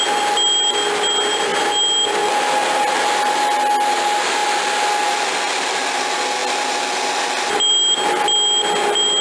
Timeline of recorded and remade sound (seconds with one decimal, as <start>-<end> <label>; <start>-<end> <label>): 0.0-9.2 recorded